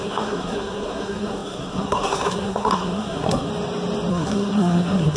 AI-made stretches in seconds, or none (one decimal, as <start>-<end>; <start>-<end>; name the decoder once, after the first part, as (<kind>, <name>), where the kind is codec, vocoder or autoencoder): 0.0-3.5 (codec, SNAC); 4.1-5.2